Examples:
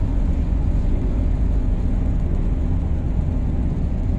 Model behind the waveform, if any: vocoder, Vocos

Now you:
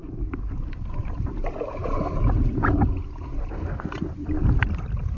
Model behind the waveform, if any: none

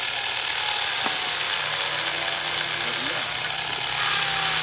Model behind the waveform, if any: none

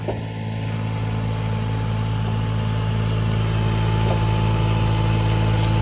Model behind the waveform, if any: none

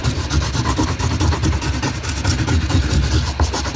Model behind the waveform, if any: none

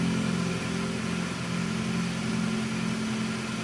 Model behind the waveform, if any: none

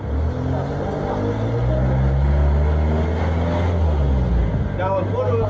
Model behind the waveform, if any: none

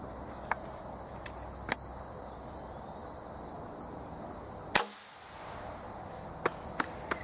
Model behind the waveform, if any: none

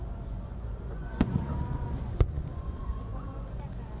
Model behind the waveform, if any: vocoder, Vocos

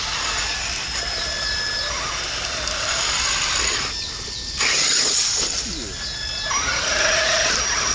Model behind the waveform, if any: none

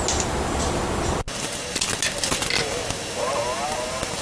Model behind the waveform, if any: none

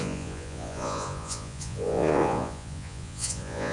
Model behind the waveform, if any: vocoder, Vocos